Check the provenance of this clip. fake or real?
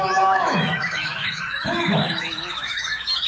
fake